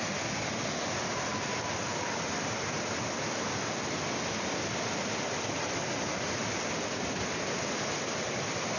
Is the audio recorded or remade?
recorded